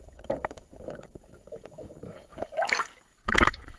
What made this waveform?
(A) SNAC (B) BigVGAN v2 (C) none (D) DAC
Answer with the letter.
D